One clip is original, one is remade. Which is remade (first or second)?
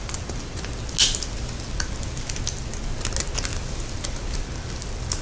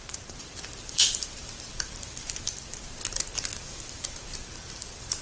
second